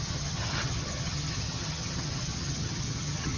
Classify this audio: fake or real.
fake